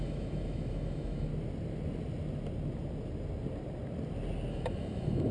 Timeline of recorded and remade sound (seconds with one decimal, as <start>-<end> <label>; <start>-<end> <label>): 0.0-1.3 remade; 1.3-4.5 recorded; 4.5-5.3 remade